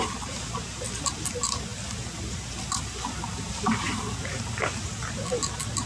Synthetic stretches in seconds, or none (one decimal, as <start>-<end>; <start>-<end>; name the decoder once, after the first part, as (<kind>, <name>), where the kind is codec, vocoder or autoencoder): none